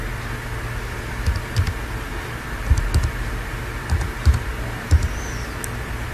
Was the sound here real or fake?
real